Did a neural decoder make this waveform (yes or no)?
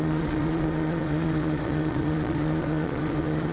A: yes